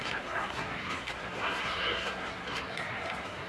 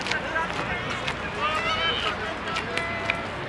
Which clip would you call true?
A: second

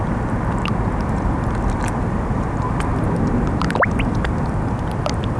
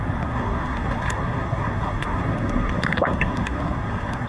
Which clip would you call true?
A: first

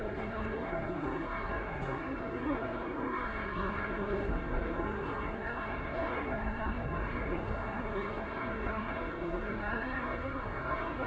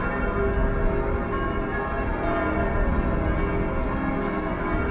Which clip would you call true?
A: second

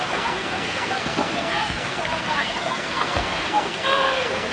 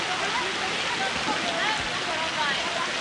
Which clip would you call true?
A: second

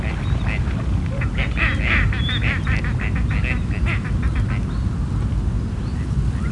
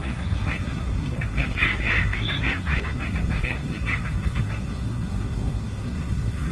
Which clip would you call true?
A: first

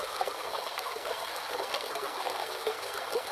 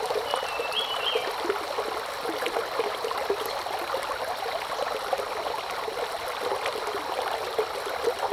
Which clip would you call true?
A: second